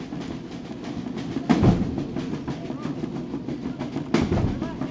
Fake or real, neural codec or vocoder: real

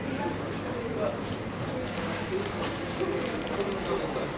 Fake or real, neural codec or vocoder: real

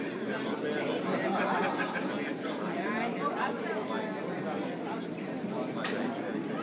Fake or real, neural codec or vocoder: real